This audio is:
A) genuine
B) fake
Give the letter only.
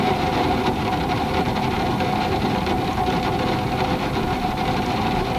B